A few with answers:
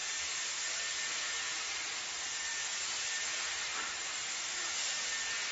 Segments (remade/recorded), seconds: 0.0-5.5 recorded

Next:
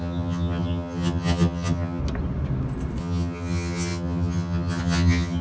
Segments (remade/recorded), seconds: 0.0-2.0 remade; 2.0-3.0 recorded; 3.0-5.4 remade

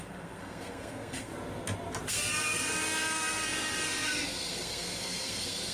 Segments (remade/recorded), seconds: 0.0-1.3 remade; 1.3-2.1 recorded; 2.1-5.7 remade